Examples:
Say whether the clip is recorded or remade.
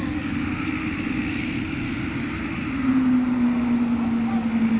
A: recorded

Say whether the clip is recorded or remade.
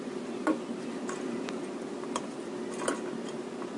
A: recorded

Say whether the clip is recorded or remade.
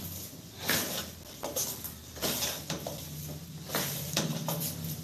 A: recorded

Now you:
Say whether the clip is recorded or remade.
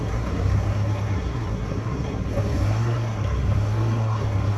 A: remade